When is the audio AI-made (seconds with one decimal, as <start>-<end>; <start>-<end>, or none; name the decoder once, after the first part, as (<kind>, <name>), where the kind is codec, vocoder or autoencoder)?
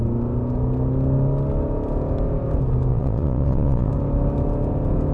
2.9-3.9 (vocoder, Vocos)